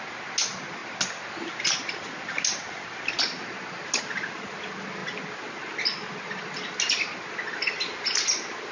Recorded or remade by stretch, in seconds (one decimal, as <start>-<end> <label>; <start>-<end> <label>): 0.0-8.7 recorded